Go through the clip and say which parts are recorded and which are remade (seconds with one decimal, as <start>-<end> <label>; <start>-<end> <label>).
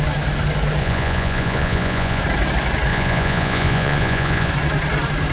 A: 0.0-0.8 recorded; 0.8-2.2 remade; 2.2-2.9 recorded; 2.9-4.5 remade; 4.5-5.3 recorded